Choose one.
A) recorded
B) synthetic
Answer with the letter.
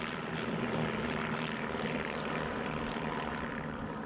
B